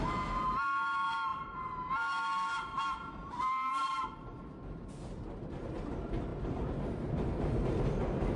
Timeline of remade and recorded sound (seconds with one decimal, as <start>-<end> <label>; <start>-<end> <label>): 0.0-6.3 recorded; 6.3-7.8 remade; 7.8-8.4 recorded